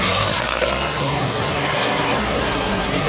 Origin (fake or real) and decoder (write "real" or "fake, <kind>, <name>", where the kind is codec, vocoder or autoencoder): fake, codec, SNAC